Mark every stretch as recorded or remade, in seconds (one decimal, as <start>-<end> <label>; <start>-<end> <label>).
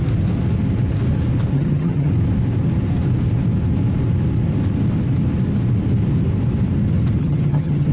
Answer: 0.0-1.5 recorded; 1.5-2.1 remade; 2.1-7.2 recorded; 7.2-7.9 remade